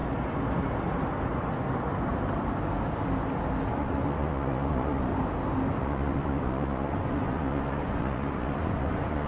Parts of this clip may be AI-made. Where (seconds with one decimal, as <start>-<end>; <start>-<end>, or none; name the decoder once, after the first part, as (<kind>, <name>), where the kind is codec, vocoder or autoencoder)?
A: 3.7-5.1 (vocoder, Vocos); 5.8-9.3

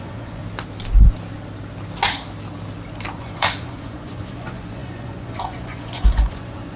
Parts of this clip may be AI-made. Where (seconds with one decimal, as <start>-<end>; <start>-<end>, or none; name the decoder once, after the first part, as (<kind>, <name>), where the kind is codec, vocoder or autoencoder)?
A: 0.0-0.4 (vocoder, Vocos); 3.2-6.8

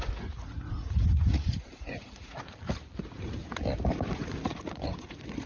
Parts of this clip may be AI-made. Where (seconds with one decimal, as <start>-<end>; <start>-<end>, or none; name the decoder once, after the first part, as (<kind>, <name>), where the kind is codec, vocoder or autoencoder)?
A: 0.0-2.5 (vocoder, Vocos); 3.0-3.5; 4.1-5.5